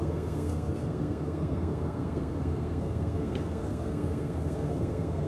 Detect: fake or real fake